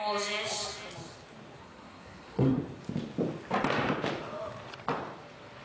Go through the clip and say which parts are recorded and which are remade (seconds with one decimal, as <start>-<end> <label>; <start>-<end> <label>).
0.0-1.6 recorded; 1.6-2.6 remade; 2.6-5.6 recorded